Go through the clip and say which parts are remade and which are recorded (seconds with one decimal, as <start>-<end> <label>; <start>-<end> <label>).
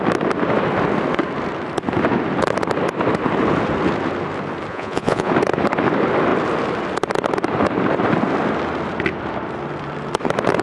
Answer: 0.0-4.7 recorded; 4.7-5.3 remade; 5.3-10.6 recorded